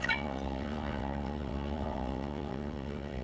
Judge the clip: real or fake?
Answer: fake